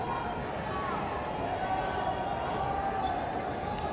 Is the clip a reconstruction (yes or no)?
no